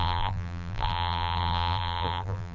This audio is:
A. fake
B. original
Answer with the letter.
A